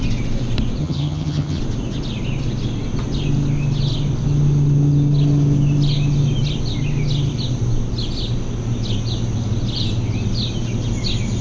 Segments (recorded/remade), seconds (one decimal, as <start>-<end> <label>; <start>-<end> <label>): 0.0-0.8 recorded; 0.8-1.6 remade; 1.6-11.4 recorded